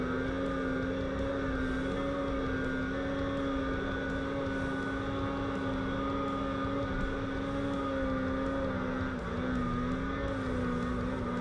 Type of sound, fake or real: real